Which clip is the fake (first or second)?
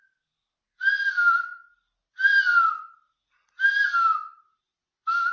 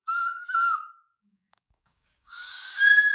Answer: second